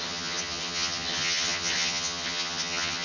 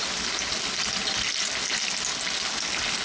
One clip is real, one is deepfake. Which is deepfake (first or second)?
first